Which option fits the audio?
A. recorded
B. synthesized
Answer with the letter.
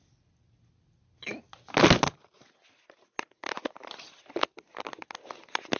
A